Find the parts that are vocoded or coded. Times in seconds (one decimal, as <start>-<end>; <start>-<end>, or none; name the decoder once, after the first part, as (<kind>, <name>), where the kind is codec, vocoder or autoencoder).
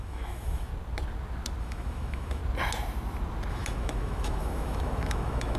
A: 0.0-0.7 (autoencoder, DAC-VAE); 1.6-2.4; 3.5-5.6